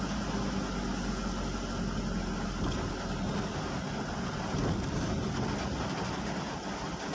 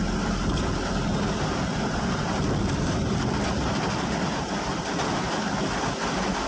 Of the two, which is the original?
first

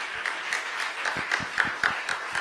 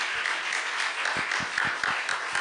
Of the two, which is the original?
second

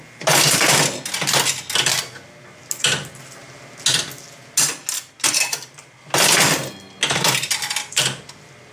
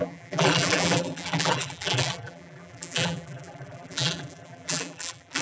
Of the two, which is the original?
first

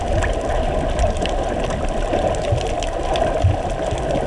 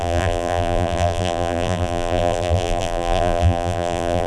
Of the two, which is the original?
first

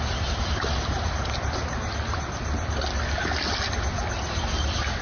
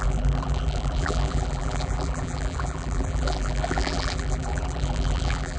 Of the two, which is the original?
first